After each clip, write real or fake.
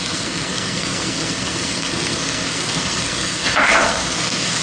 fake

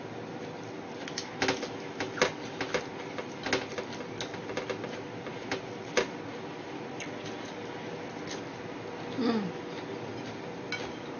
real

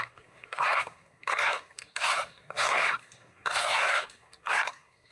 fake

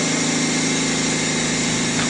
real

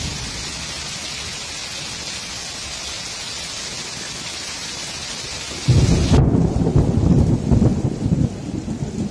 real